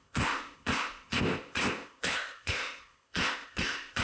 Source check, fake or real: fake